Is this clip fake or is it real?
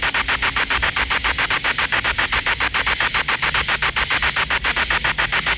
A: real